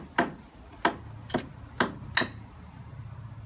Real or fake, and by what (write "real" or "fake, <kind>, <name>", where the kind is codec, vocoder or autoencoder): real